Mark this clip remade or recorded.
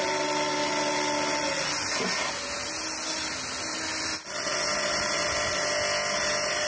recorded